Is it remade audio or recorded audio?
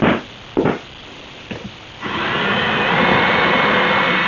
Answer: recorded